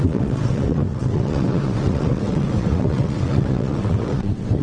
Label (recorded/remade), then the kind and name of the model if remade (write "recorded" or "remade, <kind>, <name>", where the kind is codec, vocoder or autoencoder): remade, vocoder, WaveNeXt